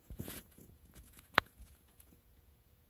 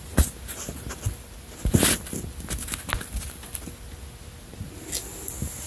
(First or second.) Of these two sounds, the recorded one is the second